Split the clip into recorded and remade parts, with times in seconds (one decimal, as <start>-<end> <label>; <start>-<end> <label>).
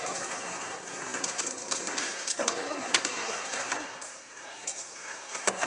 0.0-5.7 remade